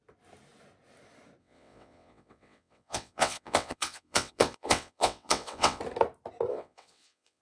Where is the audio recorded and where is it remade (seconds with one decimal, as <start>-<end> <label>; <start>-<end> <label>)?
0.0-1.4 recorded; 1.4-5.8 remade; 5.8-6.5 recorded; 6.5-7.4 remade